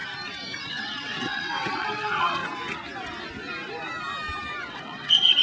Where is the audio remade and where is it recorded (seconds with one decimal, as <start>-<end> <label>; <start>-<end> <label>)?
0.0-0.7 recorded; 0.7-2.4 remade; 2.4-4.7 recorded; 4.7-5.4 remade